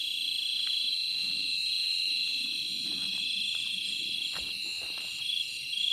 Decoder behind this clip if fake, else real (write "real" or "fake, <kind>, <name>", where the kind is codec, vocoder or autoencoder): fake, vocoder, BigVGAN v2